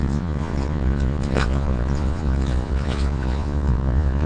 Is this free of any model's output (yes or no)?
no